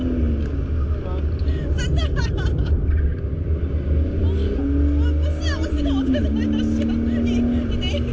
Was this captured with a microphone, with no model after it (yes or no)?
yes